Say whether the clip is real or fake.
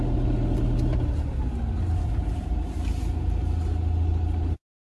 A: real